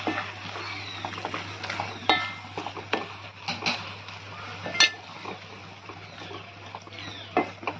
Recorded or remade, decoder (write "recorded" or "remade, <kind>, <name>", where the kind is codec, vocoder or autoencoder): recorded